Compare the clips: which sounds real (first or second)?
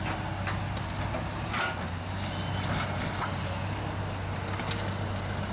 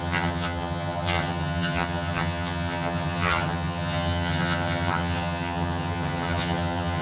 first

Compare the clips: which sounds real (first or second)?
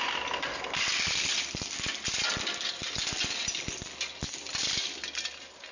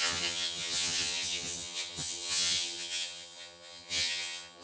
first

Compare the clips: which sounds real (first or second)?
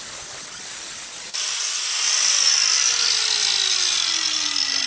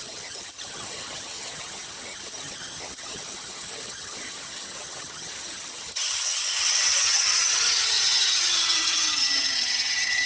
first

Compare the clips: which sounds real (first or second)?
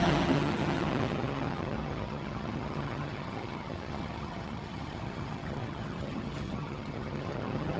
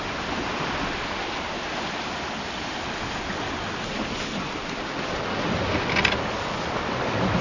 second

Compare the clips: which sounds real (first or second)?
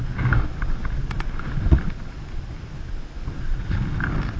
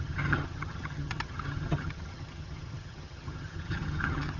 first